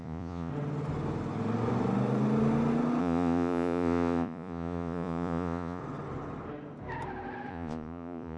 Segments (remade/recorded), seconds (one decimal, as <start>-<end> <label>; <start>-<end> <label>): 0.0-0.5 remade; 0.5-3.0 recorded; 3.0-5.8 remade; 5.8-7.5 recorded; 7.5-8.4 remade